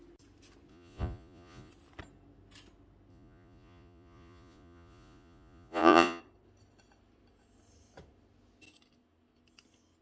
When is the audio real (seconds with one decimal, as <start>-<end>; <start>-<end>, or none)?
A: 0.0-0.7; 1.7-3.1; 6.2-10.0